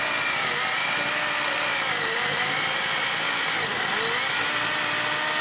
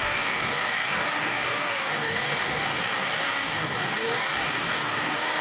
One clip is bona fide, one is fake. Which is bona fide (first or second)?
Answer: first